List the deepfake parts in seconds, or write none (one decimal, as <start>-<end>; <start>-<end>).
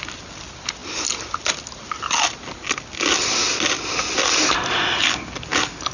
none